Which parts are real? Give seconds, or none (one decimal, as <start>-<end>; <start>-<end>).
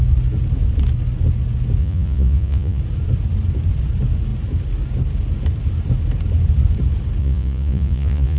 0.0-1.8; 2.8-7.2